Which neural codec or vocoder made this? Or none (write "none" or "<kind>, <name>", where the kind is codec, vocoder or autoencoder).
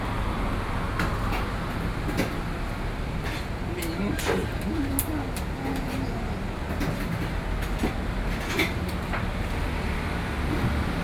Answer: none